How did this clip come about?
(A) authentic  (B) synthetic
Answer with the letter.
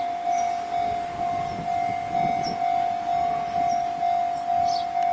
A